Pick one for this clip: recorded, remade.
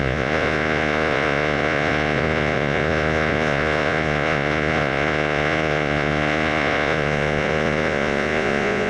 remade